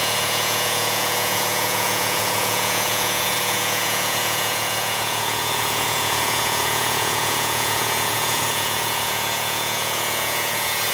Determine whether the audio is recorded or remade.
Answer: remade